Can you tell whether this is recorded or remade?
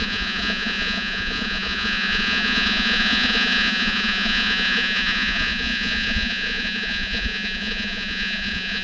remade